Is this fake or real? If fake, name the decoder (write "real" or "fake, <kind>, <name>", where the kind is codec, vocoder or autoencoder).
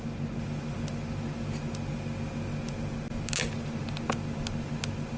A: real